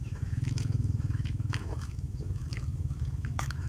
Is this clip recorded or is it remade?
remade